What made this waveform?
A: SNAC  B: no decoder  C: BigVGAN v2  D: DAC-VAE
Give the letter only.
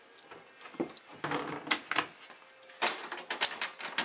B